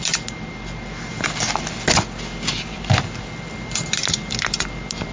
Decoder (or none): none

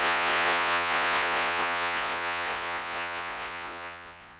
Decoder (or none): vocoder, Vocos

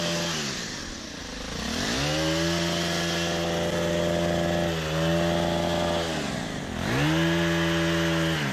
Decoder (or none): none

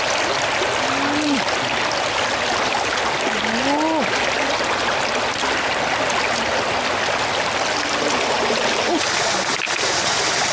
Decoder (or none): none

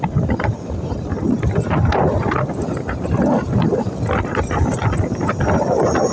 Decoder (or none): vocoder, BigVGAN v2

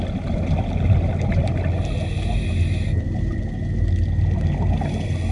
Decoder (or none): none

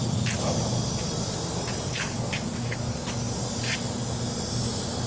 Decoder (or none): none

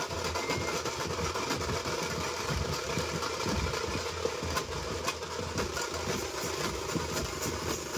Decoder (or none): vocoder, BigVGAN v2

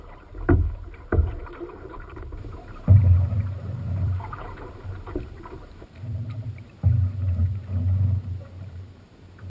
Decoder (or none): vocoder, BigVGAN v2